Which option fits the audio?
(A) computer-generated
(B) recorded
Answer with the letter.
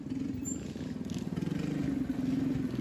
B